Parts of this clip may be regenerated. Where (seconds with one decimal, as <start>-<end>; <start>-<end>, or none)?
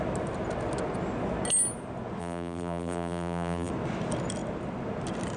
2.2-3.7